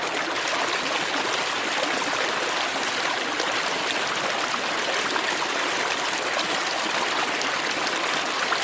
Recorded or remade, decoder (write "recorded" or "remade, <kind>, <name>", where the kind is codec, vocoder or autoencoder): recorded